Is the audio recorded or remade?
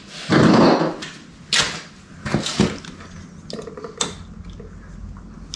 recorded